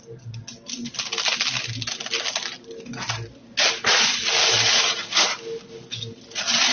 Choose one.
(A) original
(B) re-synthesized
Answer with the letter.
A